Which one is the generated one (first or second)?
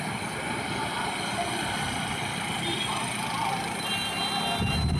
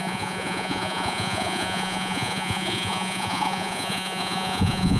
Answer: second